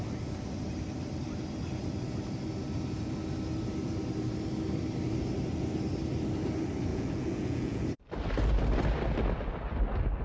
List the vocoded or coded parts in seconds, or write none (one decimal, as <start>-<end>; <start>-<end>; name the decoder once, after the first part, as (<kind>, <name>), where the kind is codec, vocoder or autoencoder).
6.9-7.8 (vocoder, Vocos)

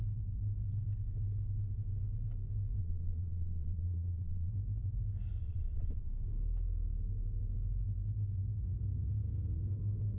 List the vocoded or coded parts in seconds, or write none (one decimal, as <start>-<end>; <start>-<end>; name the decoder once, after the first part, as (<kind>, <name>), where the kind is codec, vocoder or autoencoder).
2.8-4.5 (vocoder, Vocos); 5.4-6.1